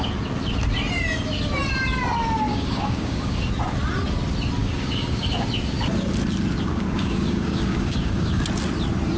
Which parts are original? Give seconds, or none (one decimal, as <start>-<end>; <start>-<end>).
0.0-2.5; 3.5-4.6; 5.3-6.7; 8.4-9.2